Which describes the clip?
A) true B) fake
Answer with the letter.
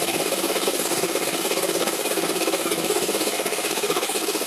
B